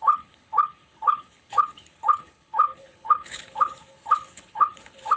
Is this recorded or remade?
remade